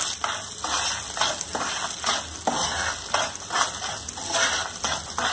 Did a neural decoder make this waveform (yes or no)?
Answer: no